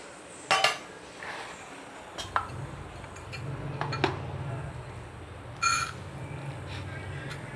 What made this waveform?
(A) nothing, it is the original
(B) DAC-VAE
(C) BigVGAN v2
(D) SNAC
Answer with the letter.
A